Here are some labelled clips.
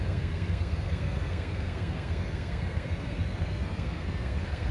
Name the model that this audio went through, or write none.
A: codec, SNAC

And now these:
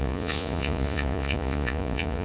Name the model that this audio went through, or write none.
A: vocoder, Vocos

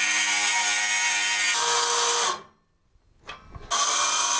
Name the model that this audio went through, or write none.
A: none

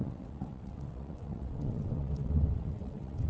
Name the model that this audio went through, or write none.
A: vocoder, WaveNeXt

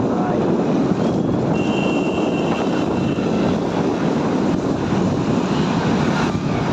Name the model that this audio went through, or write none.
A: none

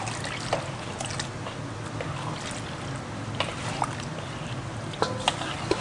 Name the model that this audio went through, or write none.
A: none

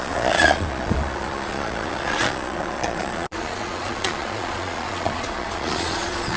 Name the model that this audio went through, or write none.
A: vocoder, Vocos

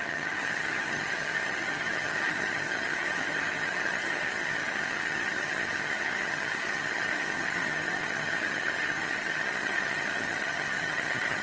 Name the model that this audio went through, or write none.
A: vocoder, HiFi-GAN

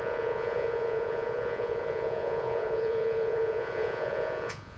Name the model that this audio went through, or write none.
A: vocoder, Vocos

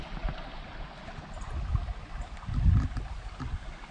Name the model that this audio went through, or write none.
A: none